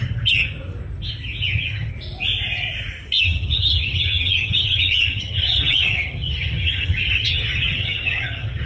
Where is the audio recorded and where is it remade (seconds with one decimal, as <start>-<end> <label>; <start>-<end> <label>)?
0.0-0.4 remade; 0.4-1.4 recorded; 1.4-1.9 remade; 1.9-3.2 recorded; 3.2-8.7 remade